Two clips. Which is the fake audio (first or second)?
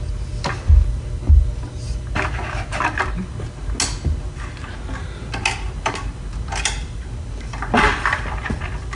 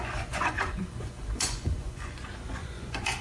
second